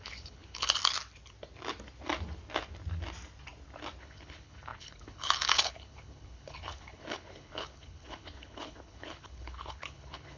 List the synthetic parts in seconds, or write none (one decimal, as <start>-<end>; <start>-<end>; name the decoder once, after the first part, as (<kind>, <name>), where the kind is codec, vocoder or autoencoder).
0.0-0.8 (codec, HILCodec); 4.0-10.4

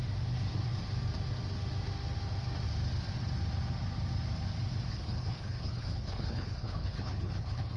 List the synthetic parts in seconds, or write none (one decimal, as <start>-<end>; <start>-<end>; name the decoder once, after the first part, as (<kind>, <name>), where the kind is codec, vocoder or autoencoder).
4.9-7.8 (codec, HILCodec)

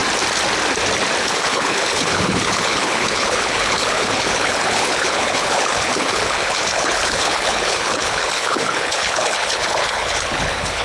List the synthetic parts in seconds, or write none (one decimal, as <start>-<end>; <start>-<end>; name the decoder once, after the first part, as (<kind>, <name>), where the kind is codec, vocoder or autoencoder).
1.2-10.8 (codec, HILCodec)

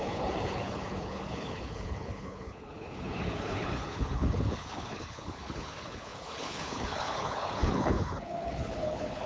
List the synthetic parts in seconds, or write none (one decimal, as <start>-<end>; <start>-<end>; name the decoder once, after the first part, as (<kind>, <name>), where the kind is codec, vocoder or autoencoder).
0.0-9.3 (codec, HILCodec)

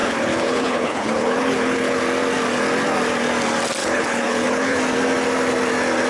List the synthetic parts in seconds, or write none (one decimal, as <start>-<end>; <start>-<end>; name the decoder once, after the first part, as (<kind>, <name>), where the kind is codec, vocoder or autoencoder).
0.0-2.0 (codec, HILCodec); 3.8-4.8

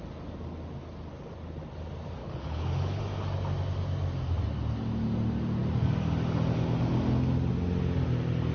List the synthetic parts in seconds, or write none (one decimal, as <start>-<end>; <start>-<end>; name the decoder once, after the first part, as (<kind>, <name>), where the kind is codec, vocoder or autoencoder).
2.2-3.0 (codec, HILCodec)

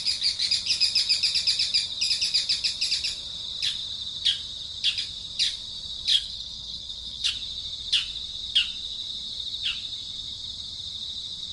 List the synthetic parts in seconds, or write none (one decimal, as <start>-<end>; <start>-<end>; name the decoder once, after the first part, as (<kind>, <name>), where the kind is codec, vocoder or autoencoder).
6.1-7.3 (codec, HILCodec)